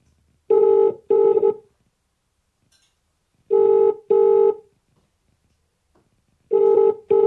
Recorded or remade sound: recorded